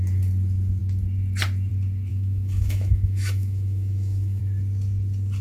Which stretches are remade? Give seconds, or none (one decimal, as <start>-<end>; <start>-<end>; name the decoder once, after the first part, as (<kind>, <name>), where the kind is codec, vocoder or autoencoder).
2.1-4.4 (autoencoder, DAC-VAE)